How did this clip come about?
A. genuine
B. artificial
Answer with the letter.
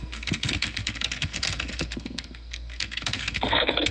B